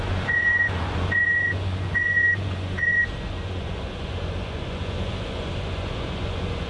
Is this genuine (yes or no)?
no